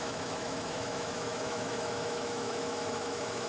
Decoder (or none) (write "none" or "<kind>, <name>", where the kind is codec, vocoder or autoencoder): autoencoder, DAC-VAE